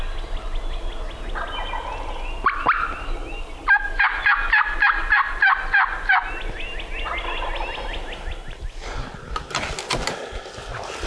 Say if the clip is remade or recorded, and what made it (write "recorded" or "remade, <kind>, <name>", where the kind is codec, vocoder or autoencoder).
recorded